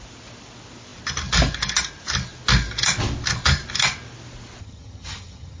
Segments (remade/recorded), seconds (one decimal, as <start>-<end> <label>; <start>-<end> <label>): 0.0-4.6 recorded; 4.6-5.6 remade